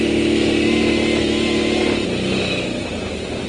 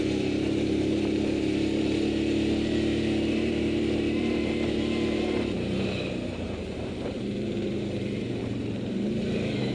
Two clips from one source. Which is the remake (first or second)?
second